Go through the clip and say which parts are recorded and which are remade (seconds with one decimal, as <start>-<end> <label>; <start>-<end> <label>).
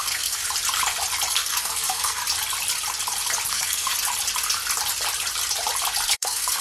0.0-0.4 remade; 0.4-1.3 recorded; 1.3-2.2 remade; 2.2-3.5 recorded; 3.5-3.9 remade; 3.9-6.1 recorded; 6.1-6.6 remade